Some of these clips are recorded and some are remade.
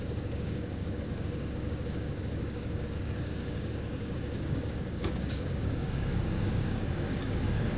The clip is remade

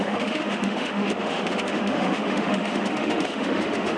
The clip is remade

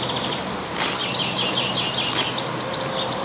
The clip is recorded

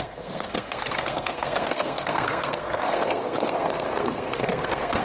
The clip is remade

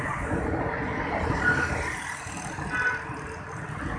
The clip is recorded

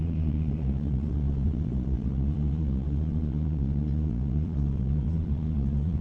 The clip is remade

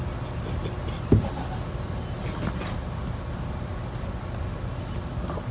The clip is recorded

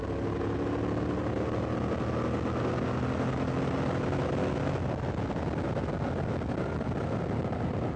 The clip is recorded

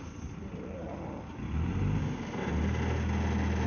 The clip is recorded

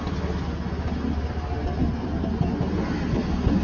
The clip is recorded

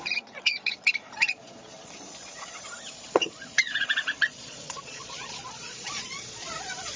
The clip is remade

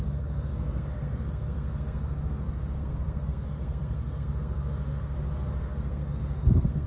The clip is remade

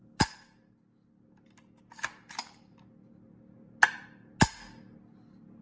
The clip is recorded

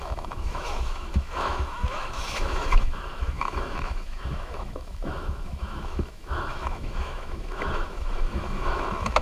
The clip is remade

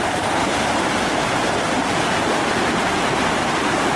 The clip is recorded